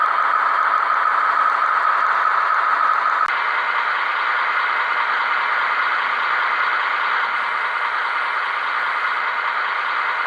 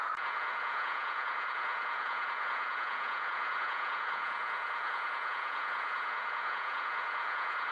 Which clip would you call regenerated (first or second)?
second